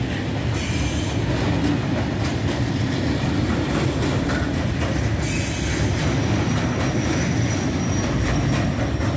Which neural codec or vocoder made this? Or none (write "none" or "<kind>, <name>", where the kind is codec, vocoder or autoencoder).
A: none